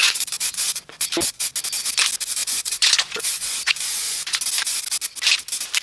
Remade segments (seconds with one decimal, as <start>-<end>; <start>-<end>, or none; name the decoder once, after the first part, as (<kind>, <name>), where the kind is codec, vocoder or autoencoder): 0.0-1.1 (vocoder, Vocos); 2.4-4.4